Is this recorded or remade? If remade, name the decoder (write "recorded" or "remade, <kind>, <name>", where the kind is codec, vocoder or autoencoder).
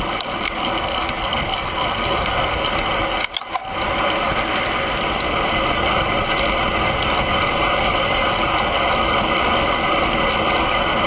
recorded